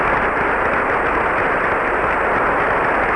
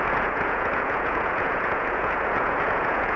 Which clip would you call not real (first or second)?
second